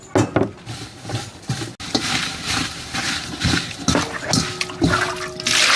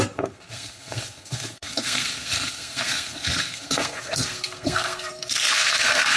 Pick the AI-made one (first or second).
second